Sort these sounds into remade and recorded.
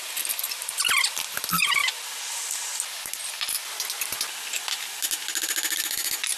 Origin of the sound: recorded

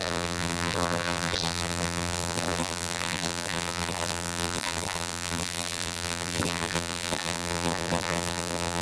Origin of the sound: remade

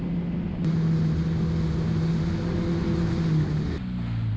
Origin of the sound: recorded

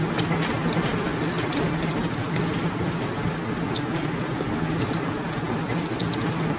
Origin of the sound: recorded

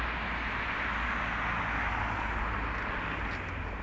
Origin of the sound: recorded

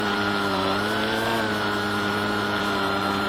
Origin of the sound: remade